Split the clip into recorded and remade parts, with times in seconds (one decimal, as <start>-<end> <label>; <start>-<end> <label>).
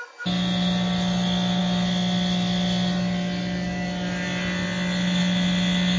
0.0-6.0 recorded